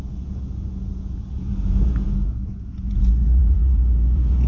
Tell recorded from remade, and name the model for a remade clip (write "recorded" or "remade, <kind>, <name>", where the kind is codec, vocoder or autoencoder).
remade, vocoder, Vocos